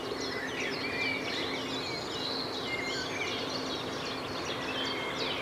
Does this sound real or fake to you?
real